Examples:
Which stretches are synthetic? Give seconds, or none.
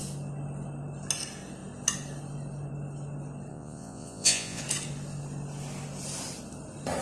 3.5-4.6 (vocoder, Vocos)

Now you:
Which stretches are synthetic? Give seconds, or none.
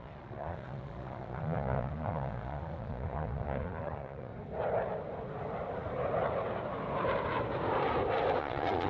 0.0-4.3 (vocoder, Vocos); 8.4-8.9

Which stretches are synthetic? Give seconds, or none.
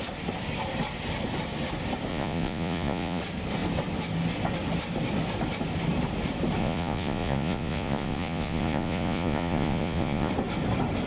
2.1-3.2 (vocoder, Vocos); 6.6-10.3